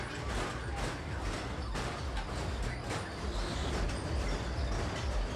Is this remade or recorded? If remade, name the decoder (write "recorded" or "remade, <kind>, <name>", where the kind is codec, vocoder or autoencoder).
recorded